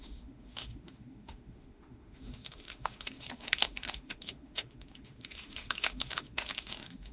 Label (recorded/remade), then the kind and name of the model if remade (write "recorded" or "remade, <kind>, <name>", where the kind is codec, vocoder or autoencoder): remade, autoencoder, DAC-VAE